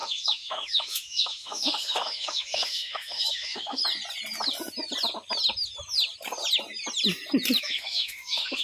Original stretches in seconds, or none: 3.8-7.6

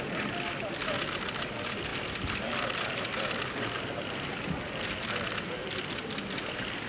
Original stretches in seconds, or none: 0.0-6.9

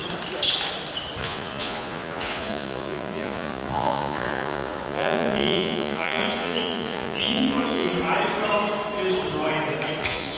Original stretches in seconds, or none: 0.0-1.2; 7.9-10.0

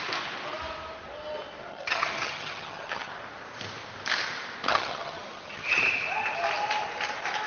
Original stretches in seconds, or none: 0.0-1.7; 3.1-4.7; 5.8-7.5

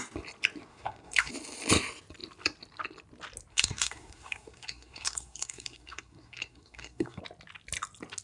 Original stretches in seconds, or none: 0.0-0.7; 1.3-3.5; 7.2-8.2

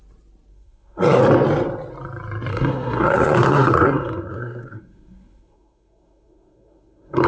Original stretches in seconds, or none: 0.0-0.5; 1.2-2.5

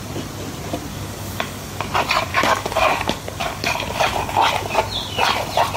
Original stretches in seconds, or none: 0.0-0.9; 1.8-2.3; 4.5-5.8

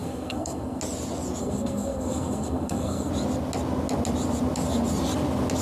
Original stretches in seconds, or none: 0.8-1.4; 3.1-5.6